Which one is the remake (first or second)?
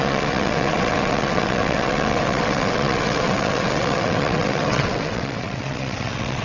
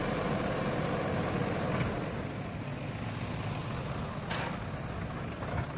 first